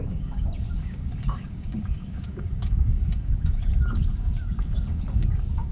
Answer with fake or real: fake